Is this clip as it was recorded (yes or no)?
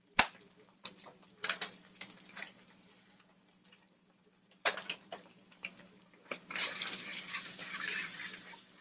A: no